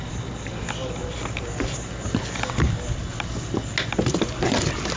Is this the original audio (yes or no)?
yes